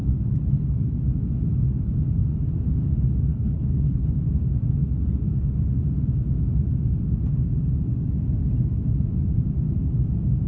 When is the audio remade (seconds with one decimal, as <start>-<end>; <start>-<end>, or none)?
3.3-4.1